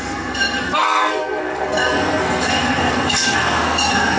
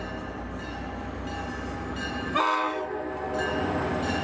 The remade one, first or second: first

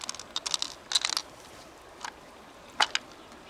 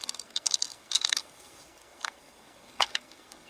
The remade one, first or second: second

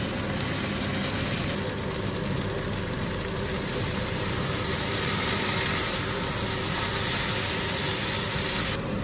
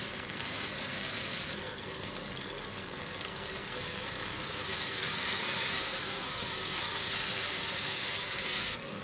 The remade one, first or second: second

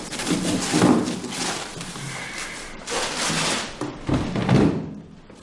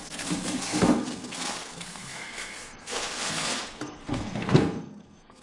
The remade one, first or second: second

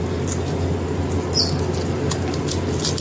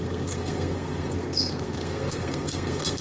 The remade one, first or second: second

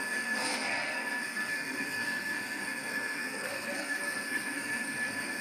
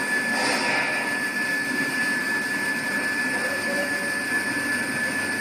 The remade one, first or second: first